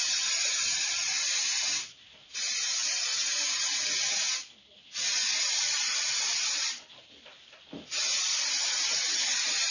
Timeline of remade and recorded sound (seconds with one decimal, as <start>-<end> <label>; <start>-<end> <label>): 0.0-2.8 remade; 2.8-5.5 recorded; 5.5-9.7 remade